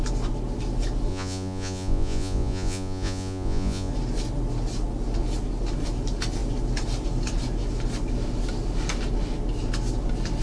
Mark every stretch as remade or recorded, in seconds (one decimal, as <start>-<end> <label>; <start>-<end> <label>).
0.0-1.1 recorded; 1.1-3.9 remade; 3.9-10.4 recorded